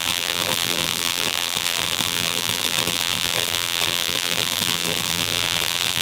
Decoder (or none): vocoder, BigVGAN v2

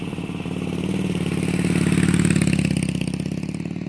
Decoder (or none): none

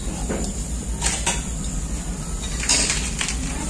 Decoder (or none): none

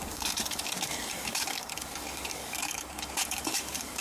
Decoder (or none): codec, DAC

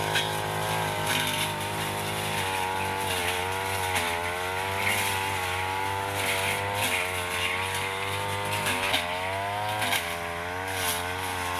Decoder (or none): none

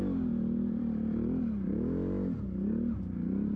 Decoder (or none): vocoder, BigVGAN v2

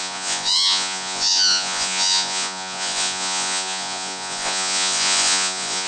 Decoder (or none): vocoder, Vocos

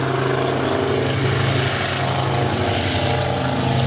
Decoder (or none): none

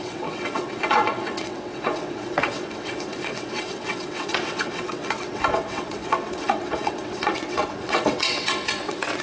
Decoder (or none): vocoder, WaveNeXt